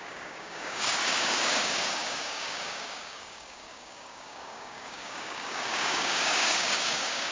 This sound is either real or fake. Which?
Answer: fake